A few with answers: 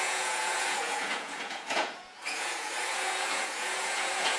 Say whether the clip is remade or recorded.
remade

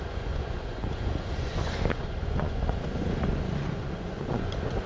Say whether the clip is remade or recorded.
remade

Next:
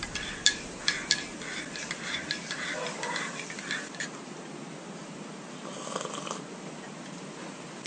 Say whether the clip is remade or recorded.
recorded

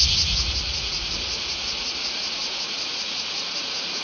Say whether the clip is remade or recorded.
remade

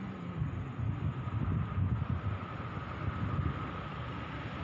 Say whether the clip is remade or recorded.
recorded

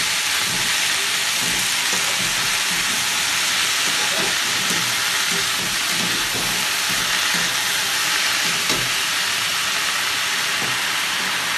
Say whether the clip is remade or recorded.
recorded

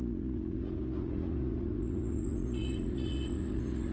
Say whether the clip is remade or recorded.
remade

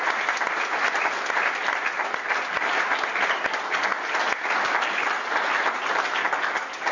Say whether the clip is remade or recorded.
recorded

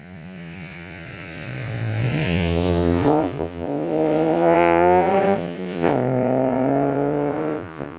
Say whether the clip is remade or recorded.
remade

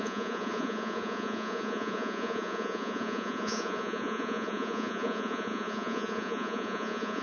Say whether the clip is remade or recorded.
remade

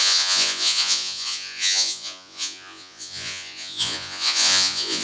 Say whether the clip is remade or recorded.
remade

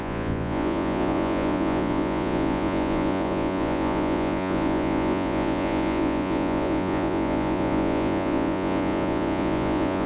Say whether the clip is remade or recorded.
remade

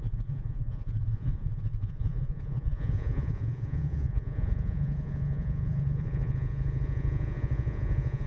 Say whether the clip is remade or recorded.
remade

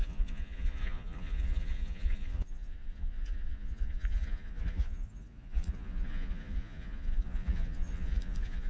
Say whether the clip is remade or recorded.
remade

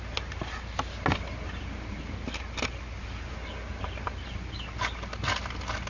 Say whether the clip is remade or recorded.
recorded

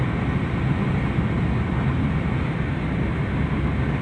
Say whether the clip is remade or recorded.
recorded